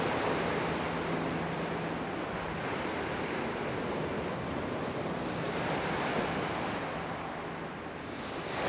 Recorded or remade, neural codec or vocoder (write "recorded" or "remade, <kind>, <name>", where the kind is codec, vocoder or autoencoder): recorded